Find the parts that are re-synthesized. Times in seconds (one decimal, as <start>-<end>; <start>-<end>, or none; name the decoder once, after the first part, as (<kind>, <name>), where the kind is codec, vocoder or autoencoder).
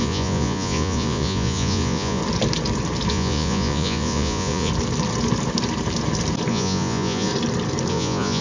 0.0-2.2 (vocoder, Vocos); 3.1-4.7; 6.5-7.3; 7.9-8.4